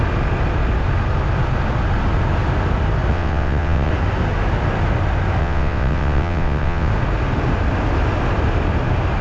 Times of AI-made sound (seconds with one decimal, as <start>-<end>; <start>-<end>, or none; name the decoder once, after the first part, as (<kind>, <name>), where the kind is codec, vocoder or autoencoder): 3.1-3.9 (vocoder, WaveNeXt); 5.4-6.9